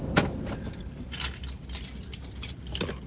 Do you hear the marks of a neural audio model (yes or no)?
no